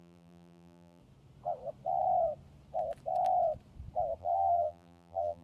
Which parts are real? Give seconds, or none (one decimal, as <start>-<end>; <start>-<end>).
1.0-4.2